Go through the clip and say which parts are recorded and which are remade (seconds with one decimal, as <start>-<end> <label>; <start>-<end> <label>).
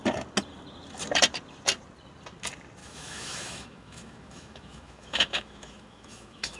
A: 0.0-2.8 recorded; 2.8-6.6 remade